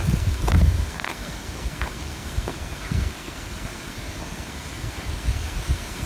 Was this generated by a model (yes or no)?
yes